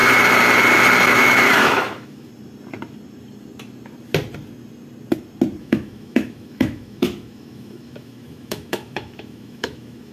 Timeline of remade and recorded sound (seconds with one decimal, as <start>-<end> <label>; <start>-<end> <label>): 0.0-1.1 recorded; 1.1-2.3 remade; 2.3-5.6 recorded; 5.6-10.1 remade

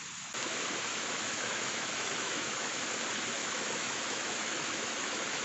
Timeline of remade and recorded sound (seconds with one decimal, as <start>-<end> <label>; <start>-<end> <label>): 0.0-0.9 recorded; 0.9-2.8 remade; 2.8-3.4 recorded; 3.4-5.4 remade

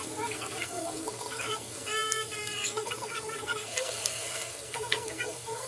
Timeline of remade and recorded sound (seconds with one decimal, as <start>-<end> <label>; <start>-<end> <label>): 0.0-5.7 remade

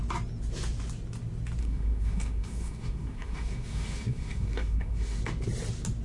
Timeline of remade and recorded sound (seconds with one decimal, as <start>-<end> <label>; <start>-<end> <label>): 0.0-1.6 recorded; 1.6-5.2 remade; 5.2-6.0 recorded

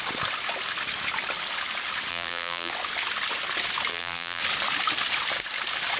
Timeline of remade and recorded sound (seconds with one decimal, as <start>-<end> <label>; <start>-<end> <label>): 0.0-2.1 recorded; 2.1-2.7 remade; 2.7-3.9 recorded; 3.9-4.4 remade; 4.4-6.0 recorded

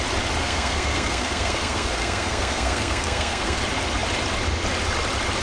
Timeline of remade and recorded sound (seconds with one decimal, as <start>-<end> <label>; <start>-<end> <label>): 0.0-0.4 recorded; 0.4-3.6 remade; 3.6-5.4 recorded

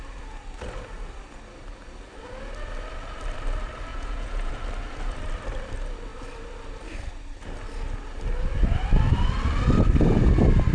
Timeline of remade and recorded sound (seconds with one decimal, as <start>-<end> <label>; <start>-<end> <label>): 0.0-3.9 recorded; 3.9-4.5 remade; 4.5-10.7 recorded

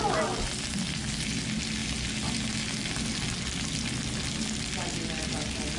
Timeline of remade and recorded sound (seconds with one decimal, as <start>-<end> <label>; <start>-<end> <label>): 0.0-5.8 recorded